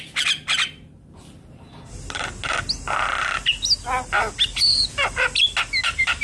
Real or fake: real